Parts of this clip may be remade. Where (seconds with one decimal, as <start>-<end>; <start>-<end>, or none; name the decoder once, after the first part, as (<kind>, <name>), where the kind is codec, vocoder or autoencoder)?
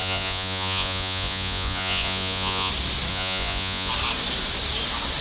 0.0-2.7 (vocoder, Vocos); 3.1-3.9